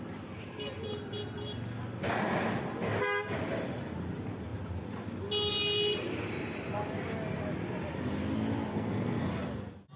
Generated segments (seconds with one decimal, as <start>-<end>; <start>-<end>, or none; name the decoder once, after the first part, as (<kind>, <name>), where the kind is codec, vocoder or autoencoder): 8.7-9.3 (codec, SNAC)